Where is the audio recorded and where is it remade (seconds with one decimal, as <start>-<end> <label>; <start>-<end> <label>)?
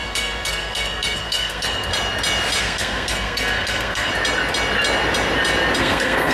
0.0-1.9 remade; 1.9-2.6 recorded; 2.6-4.1 remade; 4.1-5.8 recorded; 5.8-6.3 remade